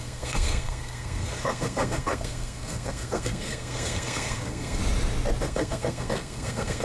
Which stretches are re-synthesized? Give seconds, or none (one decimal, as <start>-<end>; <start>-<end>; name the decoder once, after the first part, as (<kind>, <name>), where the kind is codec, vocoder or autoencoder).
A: 0.0-4.8 (codec, SNAC); 5.4-6.8